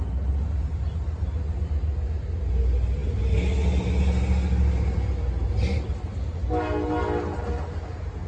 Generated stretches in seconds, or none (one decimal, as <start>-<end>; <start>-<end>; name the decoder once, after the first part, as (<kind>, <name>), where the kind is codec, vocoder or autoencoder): none